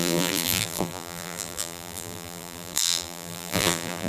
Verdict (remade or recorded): remade